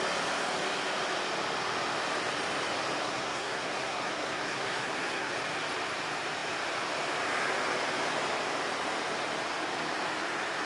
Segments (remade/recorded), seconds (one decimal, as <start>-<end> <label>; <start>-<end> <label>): 0.0-3.0 recorded; 3.0-5.3 remade; 5.3-10.7 recorded